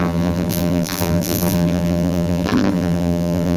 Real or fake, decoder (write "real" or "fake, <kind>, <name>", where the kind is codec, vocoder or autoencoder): fake, vocoder, BigVGAN v2